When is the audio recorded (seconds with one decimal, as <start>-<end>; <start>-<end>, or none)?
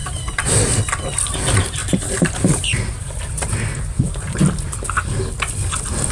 0.6-6.1